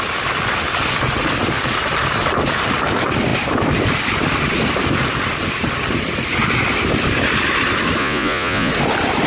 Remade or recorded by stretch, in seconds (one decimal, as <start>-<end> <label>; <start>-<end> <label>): 0.0-8.0 recorded; 8.0-8.7 remade; 8.7-9.3 recorded